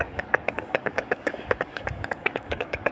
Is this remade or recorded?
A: remade